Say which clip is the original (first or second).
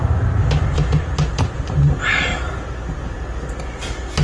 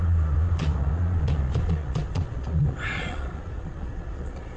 first